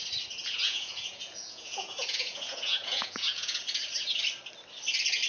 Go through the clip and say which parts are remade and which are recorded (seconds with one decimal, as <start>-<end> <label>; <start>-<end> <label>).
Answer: 0.0-0.4 recorded; 0.4-3.6 remade; 3.6-5.3 recorded